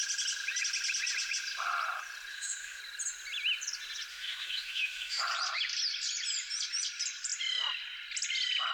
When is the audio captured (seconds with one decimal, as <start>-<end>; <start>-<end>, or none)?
0.0-2.3; 2.8-4.1; 5.2-8.7